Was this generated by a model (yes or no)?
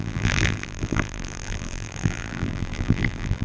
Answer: yes